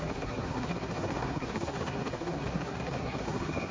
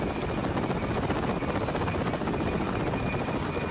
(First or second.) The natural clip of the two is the second